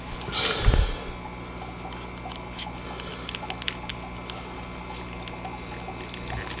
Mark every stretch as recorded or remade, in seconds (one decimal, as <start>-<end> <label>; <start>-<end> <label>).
0.0-6.6 recorded